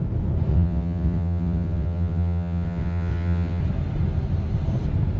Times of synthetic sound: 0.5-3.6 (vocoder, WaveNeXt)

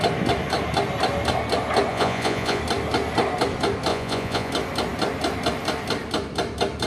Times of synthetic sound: 1.9-2.6 (vocoder, Vocos); 3.9-4.5

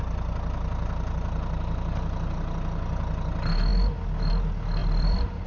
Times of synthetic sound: 4.8-5.5 (vocoder, BigVGAN v2)

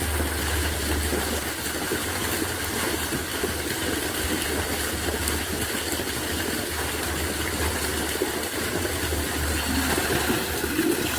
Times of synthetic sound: none

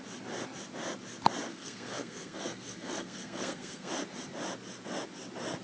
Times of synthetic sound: 1.5-3.9 (codec, SNAC)